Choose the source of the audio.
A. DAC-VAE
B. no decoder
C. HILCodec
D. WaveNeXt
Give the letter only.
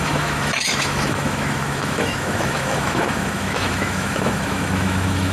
A